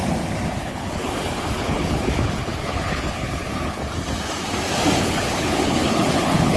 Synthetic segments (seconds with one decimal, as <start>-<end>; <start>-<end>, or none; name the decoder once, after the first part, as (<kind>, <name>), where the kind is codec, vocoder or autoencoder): 0.6-3.8 (codec, HILCodec); 5.0-6.6